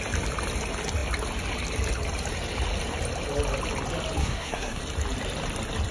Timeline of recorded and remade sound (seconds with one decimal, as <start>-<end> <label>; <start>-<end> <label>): 0.0-4.2 recorded; 4.2-4.8 remade; 4.8-5.9 recorded

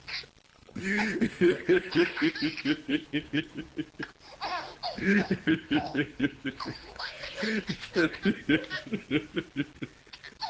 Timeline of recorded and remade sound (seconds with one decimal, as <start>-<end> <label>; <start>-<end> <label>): 0.0-0.5 recorded; 0.5-2.3 remade; 2.3-2.9 recorded; 2.9-3.6 remade; 3.6-5.0 recorded; 5.0-8.2 remade; 8.2-10.5 recorded

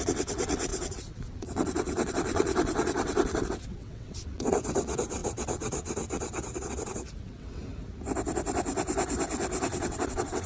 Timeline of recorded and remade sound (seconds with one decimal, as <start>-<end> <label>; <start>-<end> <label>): 0.0-7.6 remade; 7.6-9.7 recorded; 9.7-10.5 remade

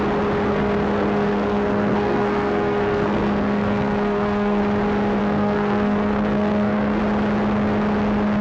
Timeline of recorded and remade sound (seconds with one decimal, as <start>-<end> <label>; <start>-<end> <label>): 0.0-0.5 recorded; 0.5-4.6 remade; 4.6-5.2 recorded; 5.2-7.0 remade; 7.0-8.4 recorded

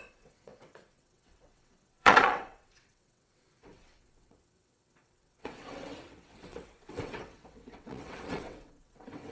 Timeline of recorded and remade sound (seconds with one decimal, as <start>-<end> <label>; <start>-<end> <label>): 0.0-9.3 remade

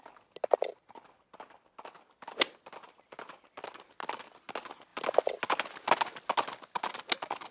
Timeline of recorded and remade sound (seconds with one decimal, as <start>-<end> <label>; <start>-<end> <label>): 0.0-7.5 recorded